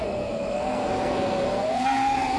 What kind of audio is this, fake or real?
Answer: fake